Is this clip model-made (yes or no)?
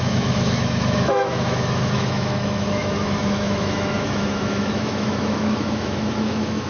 yes